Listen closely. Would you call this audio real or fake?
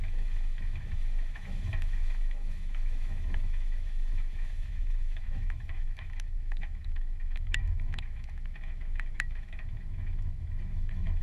fake